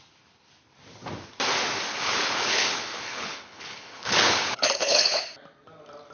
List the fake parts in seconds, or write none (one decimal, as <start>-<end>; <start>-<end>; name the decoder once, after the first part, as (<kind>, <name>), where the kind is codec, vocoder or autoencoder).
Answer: 1.9-5.2 (codec, HILCodec)